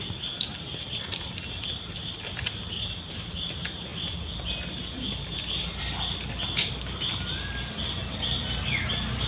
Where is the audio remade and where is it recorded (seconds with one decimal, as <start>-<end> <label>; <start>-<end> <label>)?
0.0-9.3 recorded